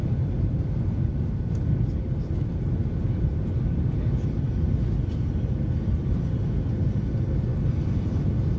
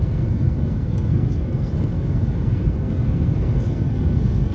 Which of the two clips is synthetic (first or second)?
second